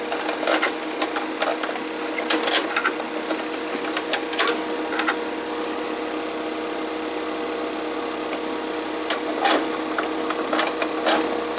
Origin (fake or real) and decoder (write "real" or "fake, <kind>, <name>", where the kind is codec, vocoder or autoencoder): real